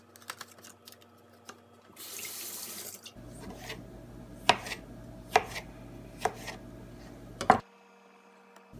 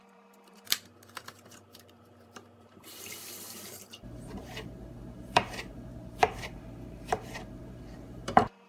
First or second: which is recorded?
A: first